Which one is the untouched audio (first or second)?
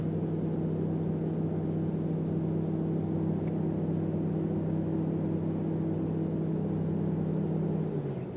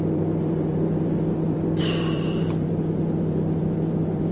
first